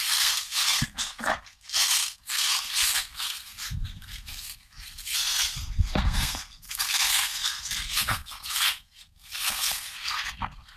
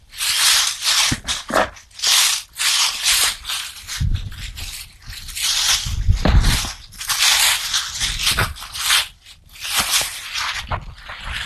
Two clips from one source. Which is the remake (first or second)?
first